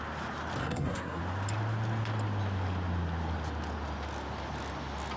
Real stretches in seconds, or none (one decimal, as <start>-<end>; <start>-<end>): 0.0-0.6; 1.2-5.2